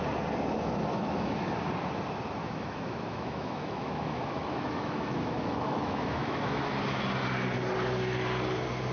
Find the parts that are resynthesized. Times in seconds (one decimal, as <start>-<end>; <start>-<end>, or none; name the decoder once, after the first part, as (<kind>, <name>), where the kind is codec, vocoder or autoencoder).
0.9-1.5 (autoencoder, DAC-VAE); 2.4-6.7